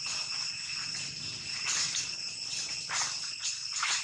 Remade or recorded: recorded